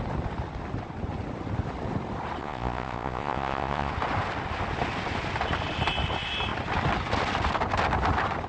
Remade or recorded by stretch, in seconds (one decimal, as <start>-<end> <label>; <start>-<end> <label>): 0.0-2.4 recorded; 2.4-3.9 remade; 3.9-8.5 recorded